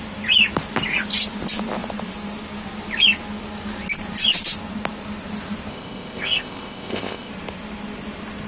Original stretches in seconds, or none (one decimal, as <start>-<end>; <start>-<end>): 0.0-5.7; 7.3-8.5